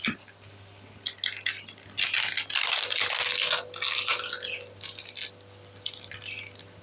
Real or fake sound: real